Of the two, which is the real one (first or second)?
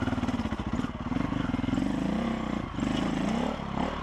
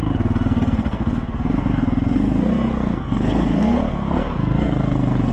first